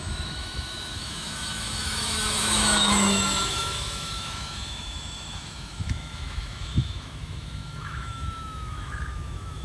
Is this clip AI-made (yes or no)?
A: yes